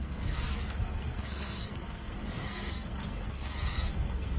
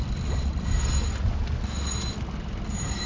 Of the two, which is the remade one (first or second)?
first